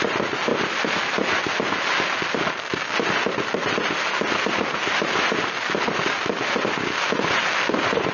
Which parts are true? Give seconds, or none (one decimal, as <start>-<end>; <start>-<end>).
0.0-8.1